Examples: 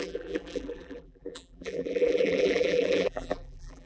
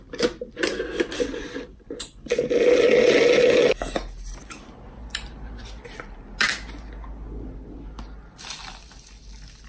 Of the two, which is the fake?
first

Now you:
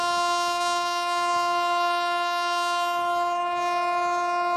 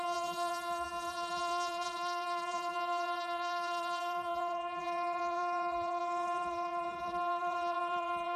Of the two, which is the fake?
second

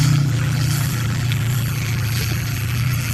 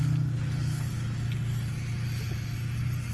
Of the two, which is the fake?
first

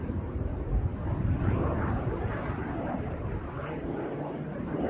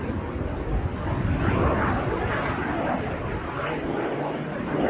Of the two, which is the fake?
first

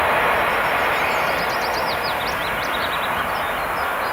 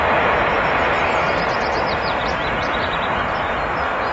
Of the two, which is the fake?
second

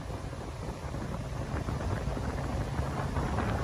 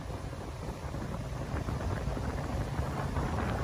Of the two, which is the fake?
second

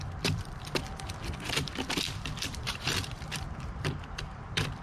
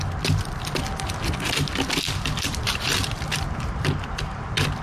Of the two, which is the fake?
first